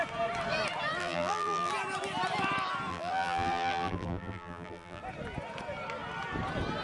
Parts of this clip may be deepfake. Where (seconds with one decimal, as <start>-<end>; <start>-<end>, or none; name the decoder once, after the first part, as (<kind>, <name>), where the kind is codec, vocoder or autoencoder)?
1.0-1.7 (vocoder, BigVGAN v2); 2.9-5.0